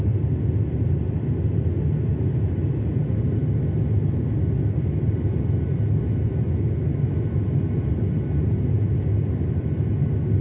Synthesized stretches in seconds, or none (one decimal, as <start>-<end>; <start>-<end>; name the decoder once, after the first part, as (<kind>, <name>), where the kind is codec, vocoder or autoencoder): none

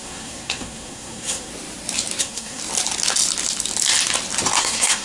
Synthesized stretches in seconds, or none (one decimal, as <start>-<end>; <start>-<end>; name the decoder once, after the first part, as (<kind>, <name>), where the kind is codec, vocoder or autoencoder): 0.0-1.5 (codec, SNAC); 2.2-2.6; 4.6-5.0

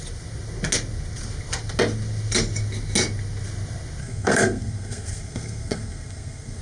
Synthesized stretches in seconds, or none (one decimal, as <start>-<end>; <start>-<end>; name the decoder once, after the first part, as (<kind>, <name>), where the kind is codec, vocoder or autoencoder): 4.0-6.6 (codec, SNAC)

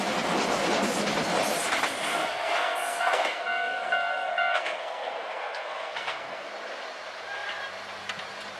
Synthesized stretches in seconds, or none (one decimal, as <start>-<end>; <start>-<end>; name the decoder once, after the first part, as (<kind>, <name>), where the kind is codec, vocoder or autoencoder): 2.1-6.5 (codec, SNAC)

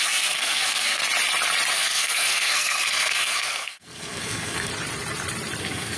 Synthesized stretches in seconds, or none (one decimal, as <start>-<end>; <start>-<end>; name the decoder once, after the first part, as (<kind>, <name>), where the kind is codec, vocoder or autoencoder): 0.0-1.0 (codec, SNAC); 1.7-4.7; 5.6-6.0

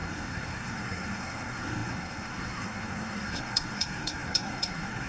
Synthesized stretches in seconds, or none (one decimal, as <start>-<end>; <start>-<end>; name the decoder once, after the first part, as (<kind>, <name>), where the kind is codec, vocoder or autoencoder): 0.0-5.1 (codec, SNAC)

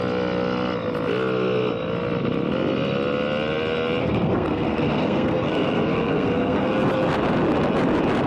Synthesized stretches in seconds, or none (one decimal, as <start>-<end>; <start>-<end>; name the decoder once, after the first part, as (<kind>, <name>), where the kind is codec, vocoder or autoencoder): 4.0-6.7 (codec, SNAC)

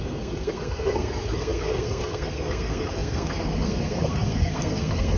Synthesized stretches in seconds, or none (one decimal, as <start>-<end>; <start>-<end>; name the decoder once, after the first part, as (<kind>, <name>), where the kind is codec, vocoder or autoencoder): 0.0-5.2 (codec, SNAC)